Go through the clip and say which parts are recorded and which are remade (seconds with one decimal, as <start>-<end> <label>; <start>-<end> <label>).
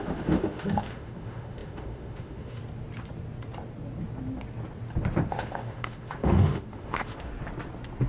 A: 0.0-2.6 remade; 2.6-5.3 recorded; 5.3-7.3 remade; 7.3-8.1 recorded